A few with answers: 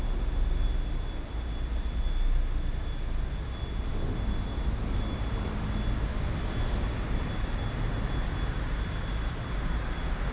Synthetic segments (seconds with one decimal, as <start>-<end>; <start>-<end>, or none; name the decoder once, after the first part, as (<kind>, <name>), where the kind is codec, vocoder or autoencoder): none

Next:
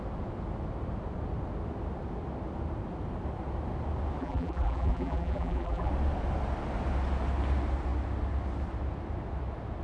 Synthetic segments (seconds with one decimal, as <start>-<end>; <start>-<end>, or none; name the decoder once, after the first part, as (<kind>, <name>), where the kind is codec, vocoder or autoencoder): 4.2-5.9 (vocoder, BigVGAN v2)

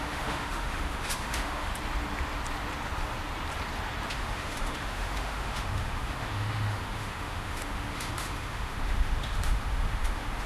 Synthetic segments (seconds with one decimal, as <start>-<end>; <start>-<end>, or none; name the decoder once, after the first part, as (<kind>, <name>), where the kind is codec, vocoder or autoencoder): 0.0-1.7 (autoencoder, DAC-VAE); 4.1-10.5